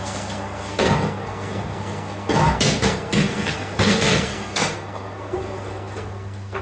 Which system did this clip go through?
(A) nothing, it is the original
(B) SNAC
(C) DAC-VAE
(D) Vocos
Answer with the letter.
B